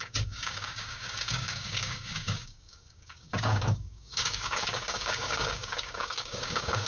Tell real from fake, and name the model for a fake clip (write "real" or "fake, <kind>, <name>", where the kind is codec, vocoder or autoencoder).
fake, codec, DAC